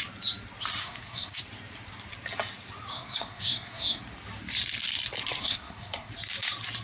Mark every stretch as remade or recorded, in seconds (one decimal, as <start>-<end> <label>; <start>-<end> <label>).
0.0-0.8 recorded; 0.8-1.4 remade; 1.4-2.9 recorded; 2.9-4.0 remade; 4.0-5.4 recorded; 5.4-6.1 remade; 6.1-6.8 recorded